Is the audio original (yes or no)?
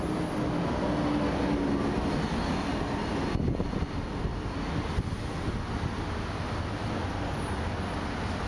yes